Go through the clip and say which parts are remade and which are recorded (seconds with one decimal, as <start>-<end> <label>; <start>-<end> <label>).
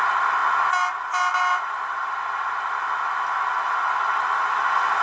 0.0-5.0 recorded